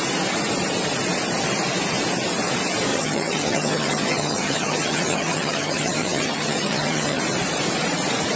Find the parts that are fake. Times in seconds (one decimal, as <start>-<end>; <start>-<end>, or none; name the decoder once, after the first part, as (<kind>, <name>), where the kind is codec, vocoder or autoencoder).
2.9-7.2 (vocoder, HiFi-GAN)